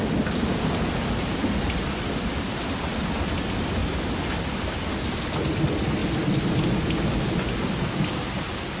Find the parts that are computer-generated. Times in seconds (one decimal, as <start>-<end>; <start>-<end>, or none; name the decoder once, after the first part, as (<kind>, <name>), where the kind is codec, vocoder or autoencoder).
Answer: none